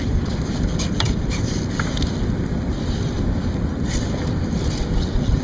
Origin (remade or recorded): remade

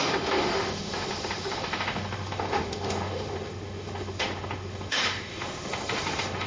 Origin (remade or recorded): remade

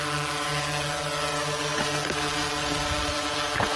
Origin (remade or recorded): recorded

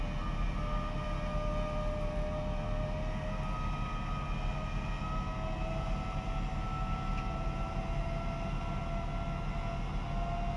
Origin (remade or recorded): recorded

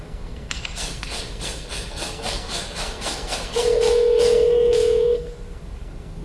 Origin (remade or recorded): remade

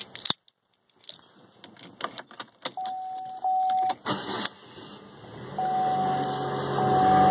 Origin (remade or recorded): recorded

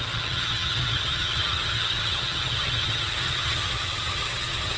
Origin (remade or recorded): remade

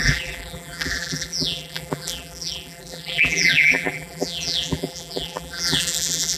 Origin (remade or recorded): remade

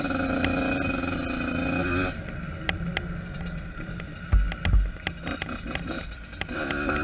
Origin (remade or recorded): recorded